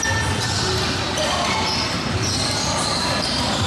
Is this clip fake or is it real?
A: real